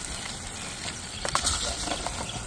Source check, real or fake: fake